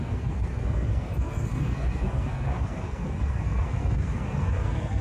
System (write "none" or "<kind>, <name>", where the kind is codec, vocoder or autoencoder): codec, SNAC